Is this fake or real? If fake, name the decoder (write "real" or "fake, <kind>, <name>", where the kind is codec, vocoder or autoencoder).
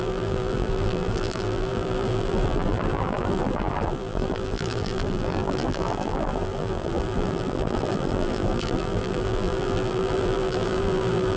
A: fake, vocoder, BigVGAN v2